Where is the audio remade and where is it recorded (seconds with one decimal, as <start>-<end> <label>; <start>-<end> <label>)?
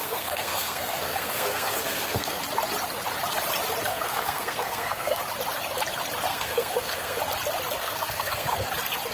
0.0-2.4 remade; 2.4-3.9 recorded; 3.9-5.2 remade; 5.2-6.3 recorded; 6.3-7.2 remade; 7.2-7.8 recorded; 7.8-8.7 remade; 8.7-9.1 recorded